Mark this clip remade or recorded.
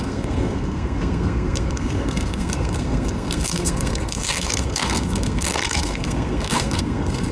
remade